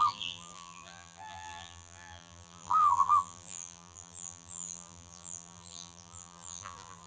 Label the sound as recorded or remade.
remade